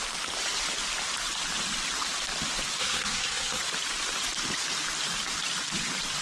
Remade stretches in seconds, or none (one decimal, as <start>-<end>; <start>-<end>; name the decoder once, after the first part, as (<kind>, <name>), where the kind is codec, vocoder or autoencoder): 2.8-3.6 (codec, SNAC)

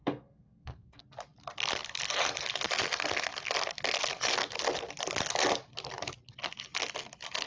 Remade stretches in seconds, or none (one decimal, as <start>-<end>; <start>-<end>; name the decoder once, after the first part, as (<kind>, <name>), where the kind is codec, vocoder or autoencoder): 0.0-1.0 (codec, SNAC)

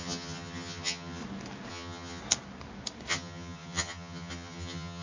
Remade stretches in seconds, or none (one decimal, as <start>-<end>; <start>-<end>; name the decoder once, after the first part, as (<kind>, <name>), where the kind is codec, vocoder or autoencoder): 0.0-1.2 (vocoder, HiFi-GAN); 1.7-2.2; 3.1-5.0

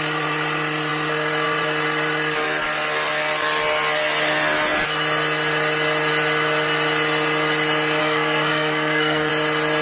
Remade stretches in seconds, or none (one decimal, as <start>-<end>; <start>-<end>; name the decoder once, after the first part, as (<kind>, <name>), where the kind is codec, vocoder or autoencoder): 8.0-9.3 (codec, SNAC)